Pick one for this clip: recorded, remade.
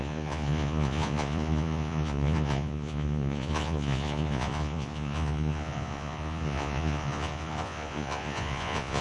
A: remade